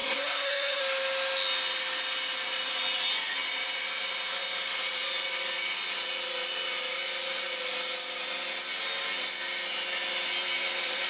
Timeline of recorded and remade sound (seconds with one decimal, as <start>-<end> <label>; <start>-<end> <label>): 0.0-0.8 remade; 0.8-11.1 recorded